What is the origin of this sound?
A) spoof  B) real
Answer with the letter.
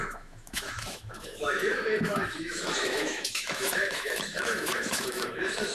A